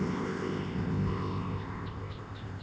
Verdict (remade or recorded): remade